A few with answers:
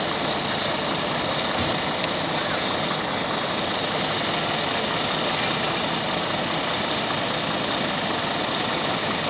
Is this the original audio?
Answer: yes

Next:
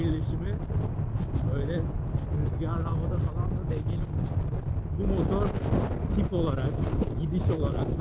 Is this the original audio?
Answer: yes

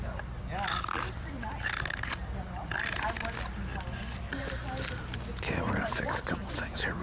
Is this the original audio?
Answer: yes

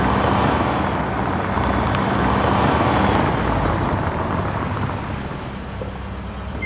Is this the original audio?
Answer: yes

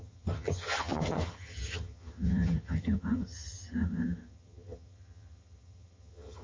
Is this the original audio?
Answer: no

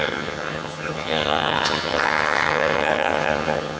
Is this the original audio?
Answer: no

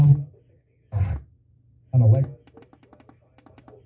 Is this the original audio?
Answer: yes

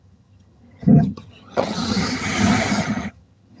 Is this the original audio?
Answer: no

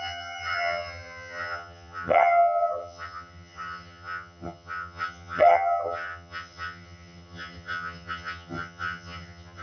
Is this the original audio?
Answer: no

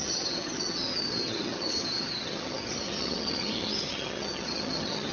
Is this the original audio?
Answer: no